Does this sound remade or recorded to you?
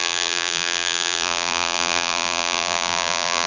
remade